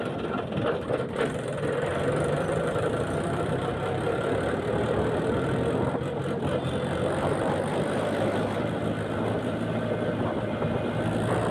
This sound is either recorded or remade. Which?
remade